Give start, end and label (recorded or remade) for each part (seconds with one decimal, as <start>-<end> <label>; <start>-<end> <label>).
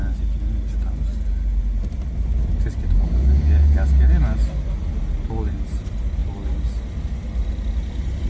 0.0-8.3 recorded